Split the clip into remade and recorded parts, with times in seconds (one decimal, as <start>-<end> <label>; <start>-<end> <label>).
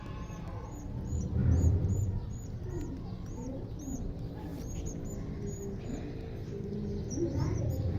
0.0-8.0 recorded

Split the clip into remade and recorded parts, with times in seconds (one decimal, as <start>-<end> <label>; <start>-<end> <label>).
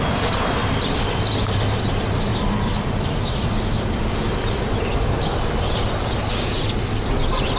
0.0-2.3 recorded; 2.3-2.9 remade; 2.9-7.6 recorded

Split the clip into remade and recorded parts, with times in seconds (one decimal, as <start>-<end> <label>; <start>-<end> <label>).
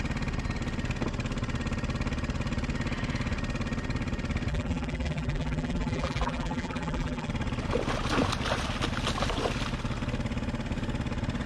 0.0-4.5 recorded; 4.5-7.3 remade; 7.3-11.5 recorded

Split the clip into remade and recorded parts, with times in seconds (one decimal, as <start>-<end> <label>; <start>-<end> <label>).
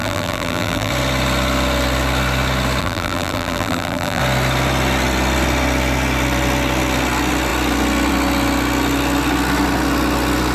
0.0-0.9 remade; 0.9-2.8 recorded; 2.8-4.2 remade; 4.2-10.5 recorded